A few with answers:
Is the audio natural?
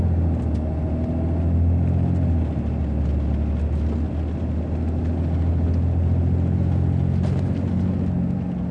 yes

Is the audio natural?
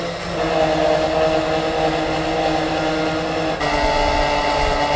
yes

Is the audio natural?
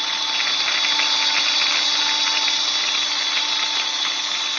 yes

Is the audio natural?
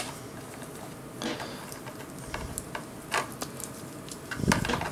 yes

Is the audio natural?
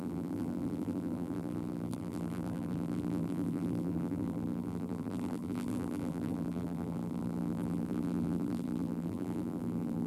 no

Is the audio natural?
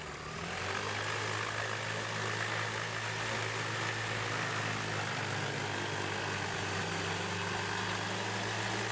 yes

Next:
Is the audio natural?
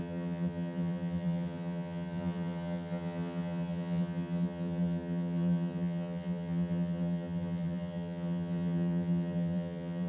no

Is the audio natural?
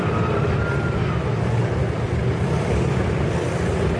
yes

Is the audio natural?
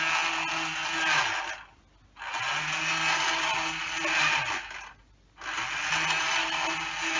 yes